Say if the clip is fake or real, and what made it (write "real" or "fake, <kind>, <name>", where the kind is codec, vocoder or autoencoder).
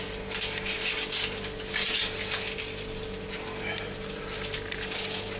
real